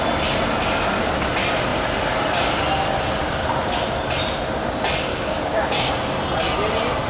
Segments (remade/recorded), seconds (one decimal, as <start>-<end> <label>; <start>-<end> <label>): 0.0-5.1 recorded; 5.1-5.9 remade; 5.9-7.1 recorded